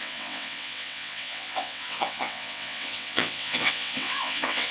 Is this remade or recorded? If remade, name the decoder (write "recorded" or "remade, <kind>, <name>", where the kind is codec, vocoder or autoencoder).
remade, vocoder, WaveNeXt